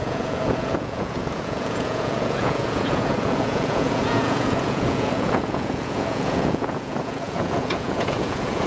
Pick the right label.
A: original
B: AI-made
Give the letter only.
B